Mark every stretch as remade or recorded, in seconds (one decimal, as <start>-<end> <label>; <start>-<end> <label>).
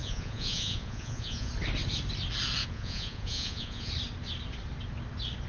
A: 0.0-1.5 remade; 1.5-2.6 recorded; 2.6-3.9 remade; 3.9-5.5 recorded